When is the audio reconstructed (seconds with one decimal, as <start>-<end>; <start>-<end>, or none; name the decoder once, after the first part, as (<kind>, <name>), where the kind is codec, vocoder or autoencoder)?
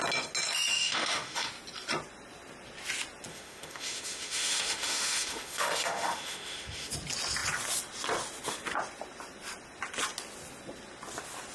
0.7-1.5 (autoencoder, DAC-VAE); 3.3-6.9